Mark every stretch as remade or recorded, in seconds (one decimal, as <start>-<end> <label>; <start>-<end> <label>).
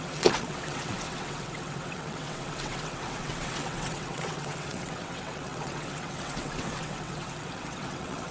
0.0-8.3 remade